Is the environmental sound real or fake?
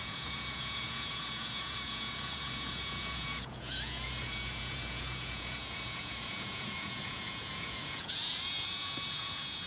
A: fake